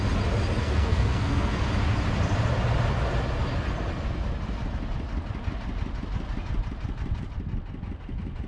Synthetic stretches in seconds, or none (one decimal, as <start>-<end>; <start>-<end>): 0.6-1.6